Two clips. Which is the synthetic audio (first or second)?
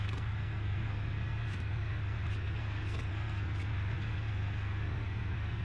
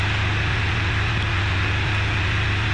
first